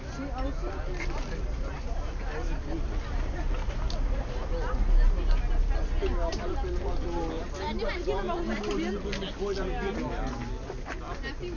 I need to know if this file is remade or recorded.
recorded